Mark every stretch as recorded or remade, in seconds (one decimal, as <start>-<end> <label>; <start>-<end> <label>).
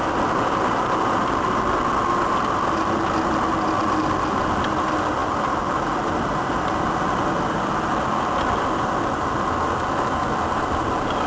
0.0-11.3 recorded